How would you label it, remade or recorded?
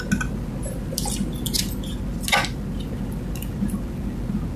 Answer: recorded